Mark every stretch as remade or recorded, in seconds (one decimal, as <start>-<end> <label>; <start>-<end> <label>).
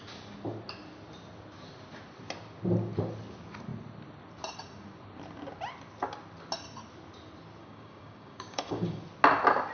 0.0-7.6 recorded; 7.6-9.0 remade; 9.0-9.7 recorded